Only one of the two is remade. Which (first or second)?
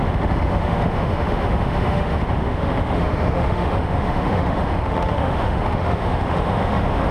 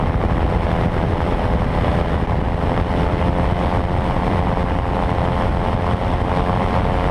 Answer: first